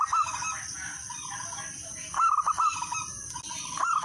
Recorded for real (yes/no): yes